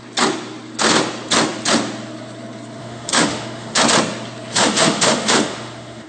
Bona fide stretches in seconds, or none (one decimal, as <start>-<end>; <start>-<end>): 0.0-2.8; 3.8-4.5